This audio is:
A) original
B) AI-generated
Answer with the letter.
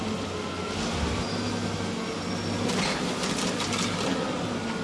A